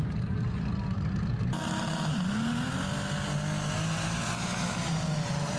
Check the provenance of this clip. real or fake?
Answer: real